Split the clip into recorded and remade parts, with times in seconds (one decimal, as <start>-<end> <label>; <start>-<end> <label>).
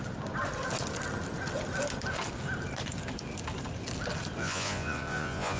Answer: 0.0-4.4 recorded; 4.4-5.6 remade